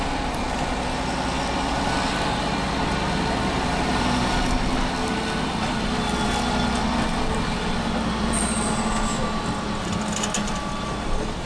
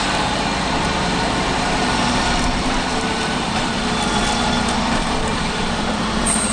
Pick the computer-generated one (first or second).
second